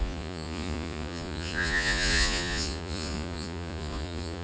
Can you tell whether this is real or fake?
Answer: fake